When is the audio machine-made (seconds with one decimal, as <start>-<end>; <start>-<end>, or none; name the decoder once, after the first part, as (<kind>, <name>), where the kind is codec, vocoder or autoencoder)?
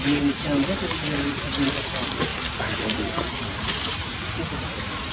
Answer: none